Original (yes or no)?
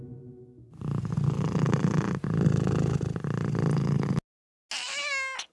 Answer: yes